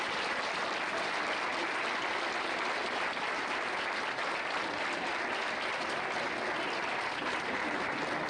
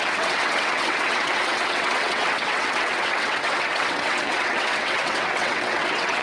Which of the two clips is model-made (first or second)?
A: second